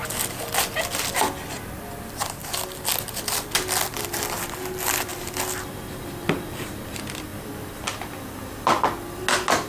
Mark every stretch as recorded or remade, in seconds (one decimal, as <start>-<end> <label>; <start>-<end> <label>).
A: 0.0-9.7 recorded